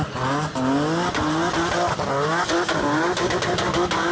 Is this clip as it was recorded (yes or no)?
yes